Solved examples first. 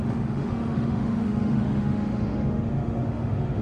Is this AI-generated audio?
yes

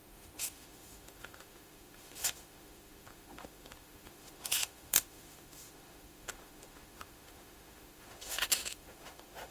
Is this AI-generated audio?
yes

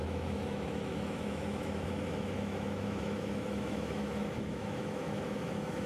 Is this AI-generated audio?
yes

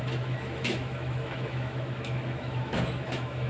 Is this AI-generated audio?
yes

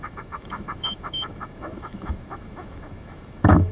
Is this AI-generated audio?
yes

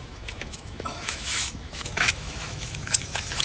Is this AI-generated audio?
yes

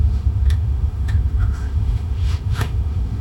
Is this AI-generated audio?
yes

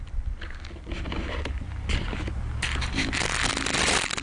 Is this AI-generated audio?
no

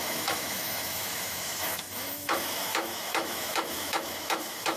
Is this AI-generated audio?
yes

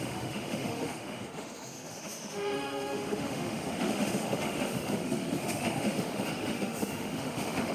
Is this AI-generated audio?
yes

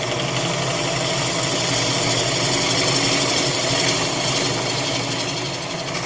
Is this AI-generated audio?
no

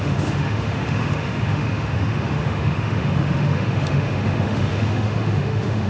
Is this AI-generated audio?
yes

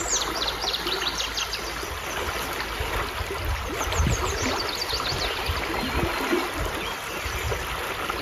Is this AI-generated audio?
no